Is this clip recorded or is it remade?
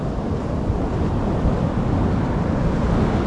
recorded